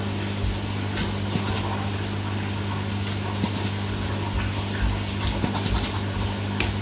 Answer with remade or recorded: recorded